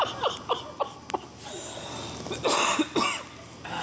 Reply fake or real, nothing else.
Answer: real